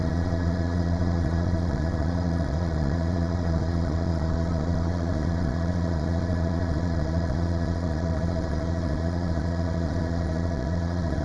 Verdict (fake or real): fake